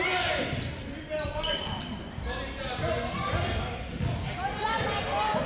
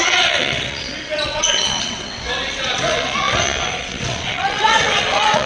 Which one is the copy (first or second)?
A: second